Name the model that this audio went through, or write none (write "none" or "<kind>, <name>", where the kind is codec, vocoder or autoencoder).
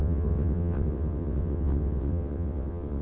vocoder, WaveNeXt